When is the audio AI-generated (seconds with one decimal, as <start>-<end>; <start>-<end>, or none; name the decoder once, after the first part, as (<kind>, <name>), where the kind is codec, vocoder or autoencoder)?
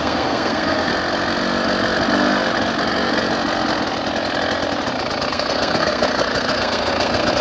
0.0-0.9 (codec, SNAC); 5.3-7.4